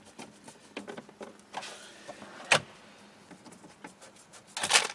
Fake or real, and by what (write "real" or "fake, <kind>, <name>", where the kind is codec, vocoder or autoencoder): real